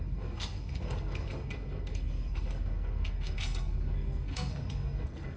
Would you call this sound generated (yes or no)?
yes